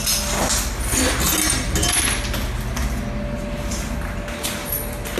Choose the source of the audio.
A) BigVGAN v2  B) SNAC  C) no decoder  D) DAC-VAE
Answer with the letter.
C